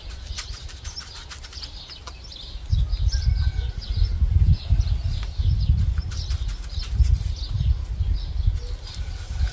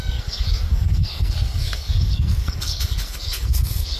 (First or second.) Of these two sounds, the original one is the first